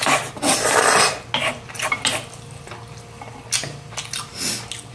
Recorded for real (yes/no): yes